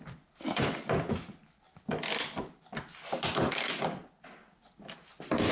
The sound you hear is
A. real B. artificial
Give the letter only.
A